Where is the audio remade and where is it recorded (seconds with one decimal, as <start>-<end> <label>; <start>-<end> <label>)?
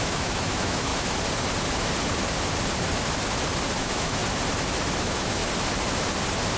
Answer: 0.0-0.9 remade; 0.9-3.8 recorded; 3.8-4.2 remade; 4.2-5.0 recorded; 5.0-5.4 remade; 5.4-6.6 recorded